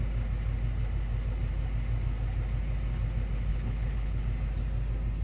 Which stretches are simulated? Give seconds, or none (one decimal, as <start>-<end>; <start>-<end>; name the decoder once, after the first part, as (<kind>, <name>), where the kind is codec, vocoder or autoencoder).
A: 3.5-4.2 (codec, HILCodec)